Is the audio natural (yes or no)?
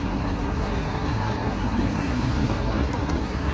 no